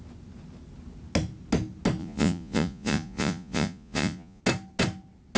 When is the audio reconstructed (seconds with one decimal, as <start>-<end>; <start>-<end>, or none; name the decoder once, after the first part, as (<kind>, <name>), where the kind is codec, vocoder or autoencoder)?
2.0-4.4 (vocoder, Vocos)